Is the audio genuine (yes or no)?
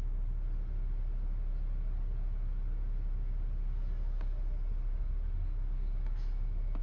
yes